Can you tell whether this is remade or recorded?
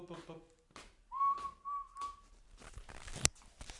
recorded